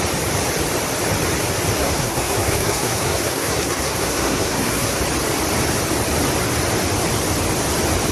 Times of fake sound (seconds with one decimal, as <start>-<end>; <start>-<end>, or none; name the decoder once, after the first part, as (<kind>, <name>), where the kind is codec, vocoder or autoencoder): 1.8-5.0 (codec, SNAC)